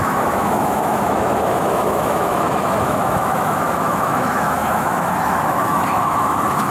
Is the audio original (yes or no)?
no